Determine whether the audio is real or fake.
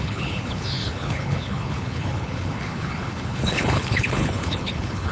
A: fake